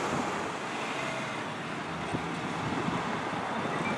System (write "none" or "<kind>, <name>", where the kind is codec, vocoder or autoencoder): none